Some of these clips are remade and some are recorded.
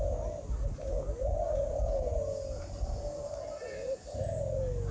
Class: recorded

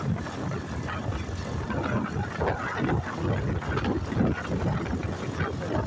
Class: recorded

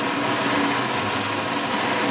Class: recorded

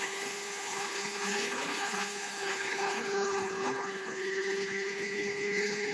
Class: remade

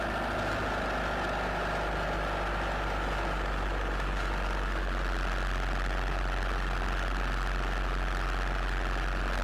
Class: recorded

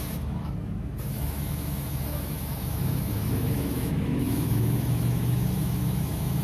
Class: remade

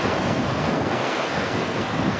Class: remade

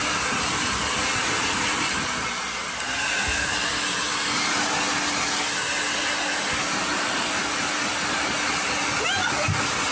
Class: recorded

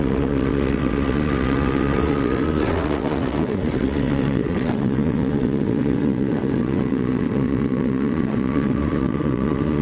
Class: remade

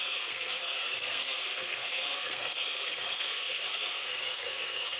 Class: remade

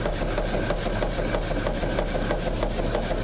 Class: recorded